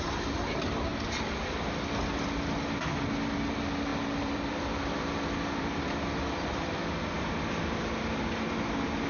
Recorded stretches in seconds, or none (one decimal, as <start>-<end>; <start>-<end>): 0.0-0.9; 1.6-3.9; 8.5-9.1